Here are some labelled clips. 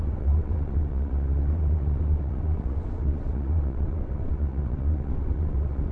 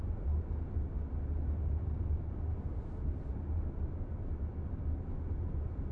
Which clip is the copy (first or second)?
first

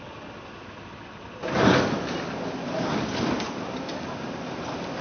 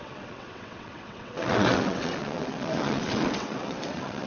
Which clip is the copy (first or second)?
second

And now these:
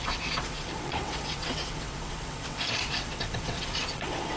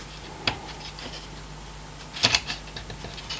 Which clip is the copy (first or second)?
first